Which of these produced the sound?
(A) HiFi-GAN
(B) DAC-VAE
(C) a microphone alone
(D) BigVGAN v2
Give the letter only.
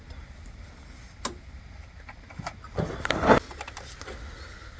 C